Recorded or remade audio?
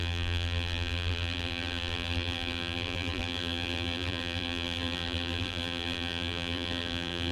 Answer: remade